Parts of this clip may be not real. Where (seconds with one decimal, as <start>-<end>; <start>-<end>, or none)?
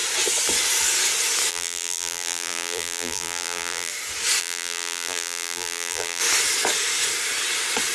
1.5-3.9; 4.4-6.2